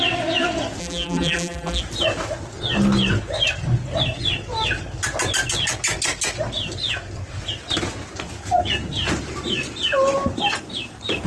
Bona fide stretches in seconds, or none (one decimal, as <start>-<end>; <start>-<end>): 0.0-0.8; 1.8-11.3